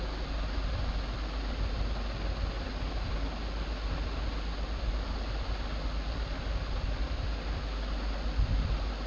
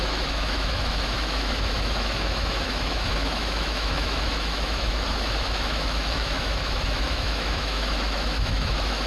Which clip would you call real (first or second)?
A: first